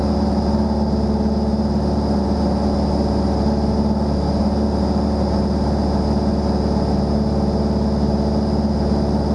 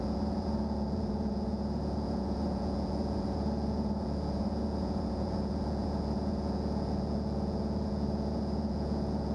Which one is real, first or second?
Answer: first